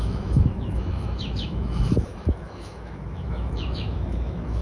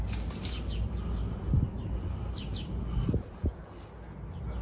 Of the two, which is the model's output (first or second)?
first